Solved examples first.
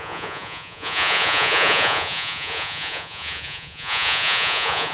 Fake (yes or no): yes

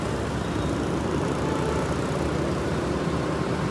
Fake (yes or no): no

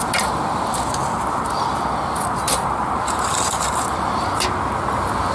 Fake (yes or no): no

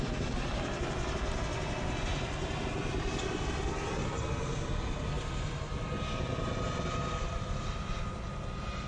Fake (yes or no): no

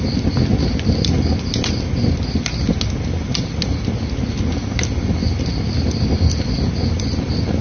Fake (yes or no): no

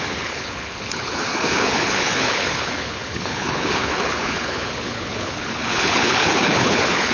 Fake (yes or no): yes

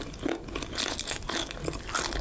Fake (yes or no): no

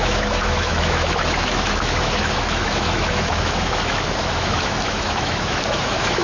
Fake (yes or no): yes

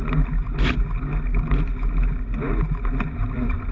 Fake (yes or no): no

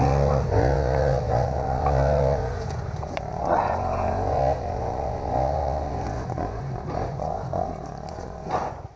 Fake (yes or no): yes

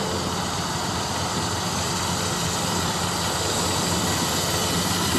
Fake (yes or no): no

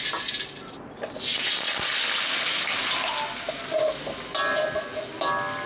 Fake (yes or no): no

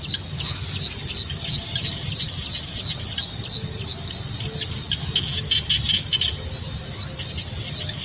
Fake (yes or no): no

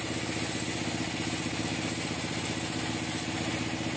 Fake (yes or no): no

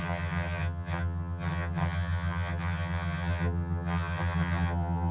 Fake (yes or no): yes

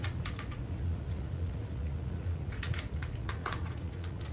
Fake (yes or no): yes